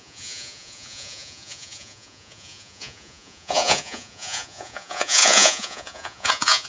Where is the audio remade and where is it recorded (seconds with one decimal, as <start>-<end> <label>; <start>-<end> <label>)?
0.0-6.7 remade